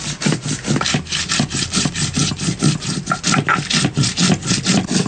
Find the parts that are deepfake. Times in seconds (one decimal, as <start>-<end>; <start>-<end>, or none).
none